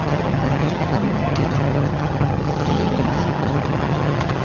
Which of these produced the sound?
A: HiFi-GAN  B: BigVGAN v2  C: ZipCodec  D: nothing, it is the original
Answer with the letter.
A